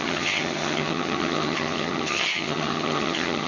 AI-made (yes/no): yes